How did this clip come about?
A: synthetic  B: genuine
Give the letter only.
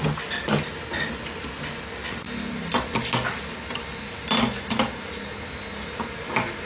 B